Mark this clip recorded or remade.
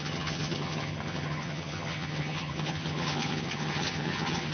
remade